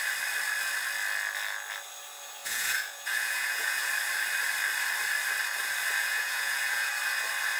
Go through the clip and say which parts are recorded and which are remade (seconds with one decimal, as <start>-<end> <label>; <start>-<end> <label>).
0.0-2.4 recorded; 2.4-3.9 remade; 3.9-6.0 recorded; 6.0-6.9 remade; 6.9-7.6 recorded